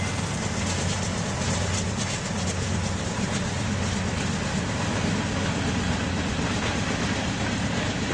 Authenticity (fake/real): real